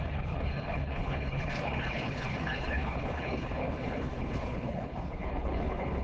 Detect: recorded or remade remade